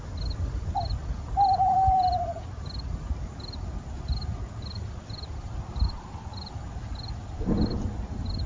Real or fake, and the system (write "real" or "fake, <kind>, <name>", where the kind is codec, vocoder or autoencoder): real